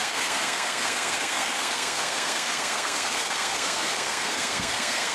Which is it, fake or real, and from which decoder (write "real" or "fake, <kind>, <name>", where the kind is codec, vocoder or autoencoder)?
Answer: fake, codec, SNAC